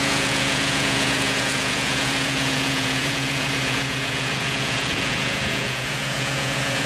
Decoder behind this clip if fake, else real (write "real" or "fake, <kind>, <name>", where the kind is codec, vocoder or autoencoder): fake, vocoder, Vocos